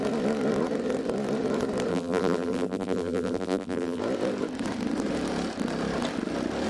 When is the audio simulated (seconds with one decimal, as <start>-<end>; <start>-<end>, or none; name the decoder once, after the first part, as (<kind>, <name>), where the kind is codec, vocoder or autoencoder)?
1.9-4.0 (vocoder, BigVGAN v2)

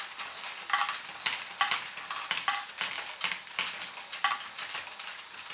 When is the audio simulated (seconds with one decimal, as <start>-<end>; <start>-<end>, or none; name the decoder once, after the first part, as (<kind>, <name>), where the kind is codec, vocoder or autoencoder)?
none

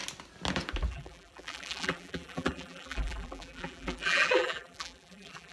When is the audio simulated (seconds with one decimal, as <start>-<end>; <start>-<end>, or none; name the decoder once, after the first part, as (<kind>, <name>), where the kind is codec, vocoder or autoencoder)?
0.9-5.5 (vocoder, BigVGAN v2)

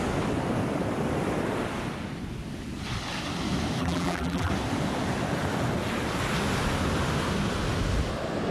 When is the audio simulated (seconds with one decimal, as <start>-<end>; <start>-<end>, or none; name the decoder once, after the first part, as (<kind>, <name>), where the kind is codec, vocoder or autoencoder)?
3.8-4.5 (vocoder, BigVGAN v2)

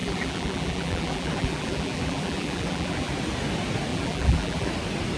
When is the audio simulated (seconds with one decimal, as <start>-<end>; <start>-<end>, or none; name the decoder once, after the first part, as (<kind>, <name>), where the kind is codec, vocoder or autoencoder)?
0.0-3.1 (vocoder, BigVGAN v2); 3.9-4.7

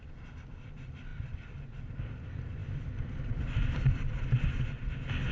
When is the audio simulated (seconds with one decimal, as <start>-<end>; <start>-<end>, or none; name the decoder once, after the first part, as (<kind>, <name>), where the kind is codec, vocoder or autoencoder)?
none